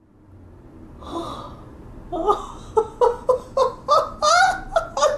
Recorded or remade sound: recorded